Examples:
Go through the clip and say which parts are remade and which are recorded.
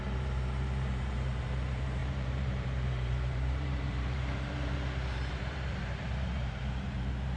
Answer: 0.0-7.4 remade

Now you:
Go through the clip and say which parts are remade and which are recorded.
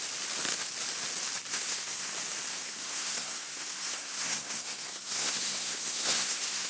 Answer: 0.0-1.5 recorded; 1.5-2.1 remade; 2.1-2.5 recorded; 2.5-6.7 remade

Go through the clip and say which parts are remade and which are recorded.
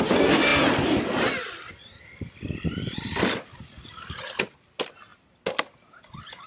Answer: 0.0-6.5 recorded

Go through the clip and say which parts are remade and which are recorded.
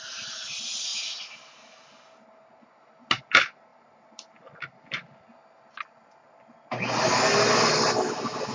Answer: 0.0-8.5 recorded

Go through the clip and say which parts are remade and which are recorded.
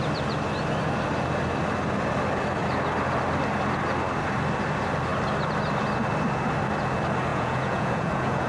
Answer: 0.0-7.3 recorded; 7.3-8.5 remade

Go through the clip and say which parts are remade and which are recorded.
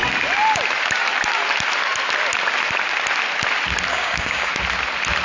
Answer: 0.0-3.9 recorded; 3.9-4.5 remade; 4.5-5.2 recorded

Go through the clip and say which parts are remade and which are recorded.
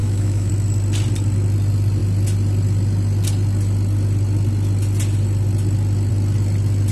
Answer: 0.0-0.5 remade; 0.5-6.9 recorded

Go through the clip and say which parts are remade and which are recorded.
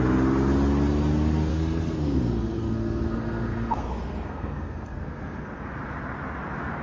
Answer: 0.0-1.5 recorded; 1.5-5.6 remade; 5.6-6.8 recorded